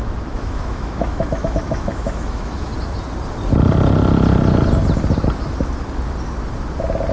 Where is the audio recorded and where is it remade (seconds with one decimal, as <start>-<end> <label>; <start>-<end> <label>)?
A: 0.0-2.7 remade; 2.7-7.1 recorded